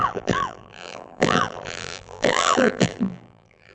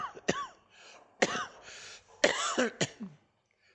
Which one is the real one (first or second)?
second